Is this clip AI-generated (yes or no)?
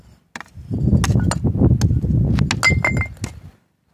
no